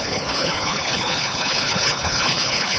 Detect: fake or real fake